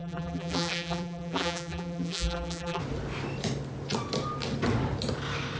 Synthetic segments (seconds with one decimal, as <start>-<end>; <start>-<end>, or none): 0.0-2.8

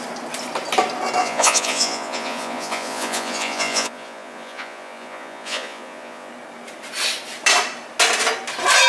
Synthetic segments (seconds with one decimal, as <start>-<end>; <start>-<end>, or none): 1.2-6.3

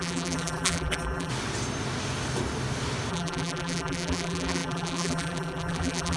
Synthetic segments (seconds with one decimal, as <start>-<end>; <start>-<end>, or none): 0.0-1.3; 3.1-6.2

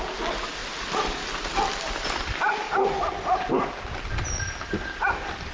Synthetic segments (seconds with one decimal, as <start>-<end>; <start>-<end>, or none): none

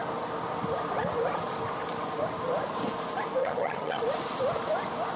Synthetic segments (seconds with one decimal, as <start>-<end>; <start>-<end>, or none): 3.4-4.0

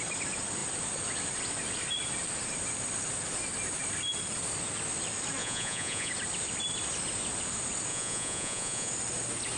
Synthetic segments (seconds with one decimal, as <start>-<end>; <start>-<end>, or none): 5.4-6.1; 7.9-8.9